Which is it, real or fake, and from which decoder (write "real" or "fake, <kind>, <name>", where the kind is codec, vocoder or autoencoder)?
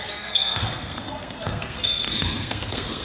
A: fake, codec, SNAC